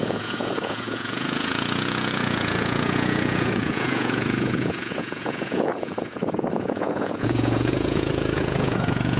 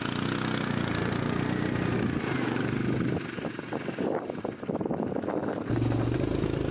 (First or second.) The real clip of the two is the second